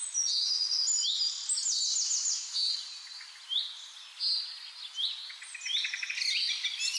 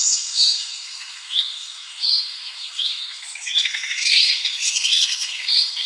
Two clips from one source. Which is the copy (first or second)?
second